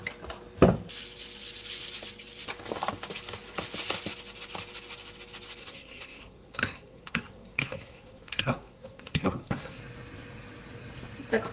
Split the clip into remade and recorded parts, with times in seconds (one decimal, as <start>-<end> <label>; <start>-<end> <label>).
0.0-5.6 recorded; 5.6-9.8 remade; 9.8-11.5 recorded